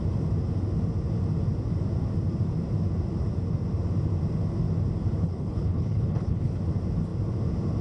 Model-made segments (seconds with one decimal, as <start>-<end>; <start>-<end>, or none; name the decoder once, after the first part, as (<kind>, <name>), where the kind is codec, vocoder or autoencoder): 5.2-6.6 (codec, HILCodec)